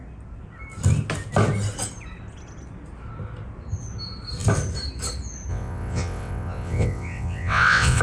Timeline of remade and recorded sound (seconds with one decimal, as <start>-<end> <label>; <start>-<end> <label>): 0.0-5.5 recorded; 5.5-8.0 remade